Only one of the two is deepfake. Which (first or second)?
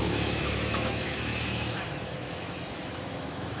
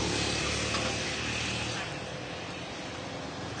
first